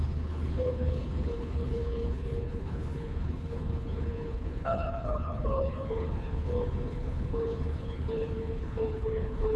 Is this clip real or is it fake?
fake